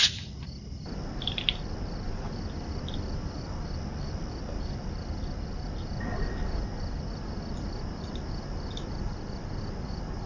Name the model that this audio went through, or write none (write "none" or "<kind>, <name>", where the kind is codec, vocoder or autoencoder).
none